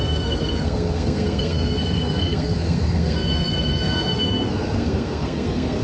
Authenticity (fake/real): fake